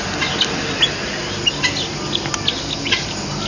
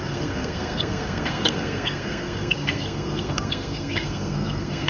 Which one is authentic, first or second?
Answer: first